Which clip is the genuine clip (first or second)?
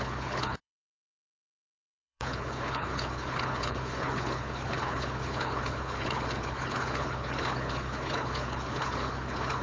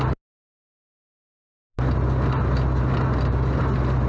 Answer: second